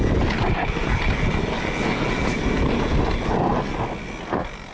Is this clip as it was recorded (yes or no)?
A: yes